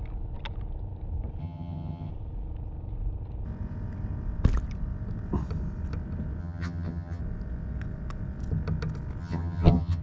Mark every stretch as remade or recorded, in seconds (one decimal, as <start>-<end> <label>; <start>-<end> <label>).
0.0-1.4 recorded; 1.4-2.1 remade; 2.1-6.4 recorded; 6.4-7.2 remade; 7.2-9.2 recorded; 9.2-10.0 remade

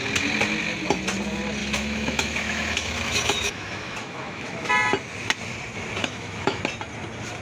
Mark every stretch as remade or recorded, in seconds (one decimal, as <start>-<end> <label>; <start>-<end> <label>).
0.0-1.6 recorded; 1.6-4.7 remade; 4.7-6.0 recorded; 6.0-6.6 remade; 6.6-7.4 recorded

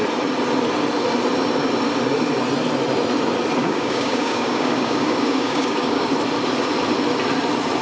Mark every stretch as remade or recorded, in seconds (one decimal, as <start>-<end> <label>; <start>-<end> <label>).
0.0-3.6 recorded; 3.6-6.1 remade; 6.1-7.8 recorded

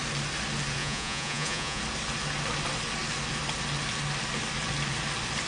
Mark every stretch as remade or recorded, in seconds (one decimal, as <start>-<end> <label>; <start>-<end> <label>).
0.0-0.8 recorded; 0.8-1.8 remade; 1.8-5.5 recorded

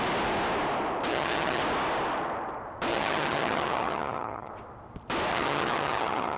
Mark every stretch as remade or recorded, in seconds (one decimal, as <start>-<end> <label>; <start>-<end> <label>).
0.0-1.1 recorded; 1.1-1.6 remade; 1.6-2.9 recorded; 2.9-4.5 remade; 4.5-5.3 recorded; 5.3-6.4 remade

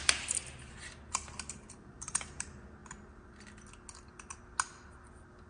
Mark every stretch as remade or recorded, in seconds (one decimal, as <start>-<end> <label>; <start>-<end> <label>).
0.0-2.8 remade; 2.8-5.5 recorded

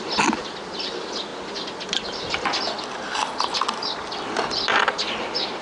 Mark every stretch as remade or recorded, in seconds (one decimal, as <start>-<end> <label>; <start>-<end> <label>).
0.0-5.6 recorded